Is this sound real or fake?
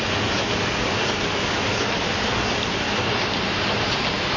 real